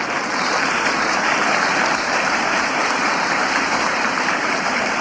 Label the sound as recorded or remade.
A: remade